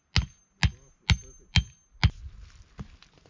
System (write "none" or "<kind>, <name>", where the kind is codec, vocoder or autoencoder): none